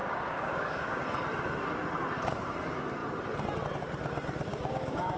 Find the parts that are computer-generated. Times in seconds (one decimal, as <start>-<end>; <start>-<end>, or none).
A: 0.0-1.0; 4.5-5.2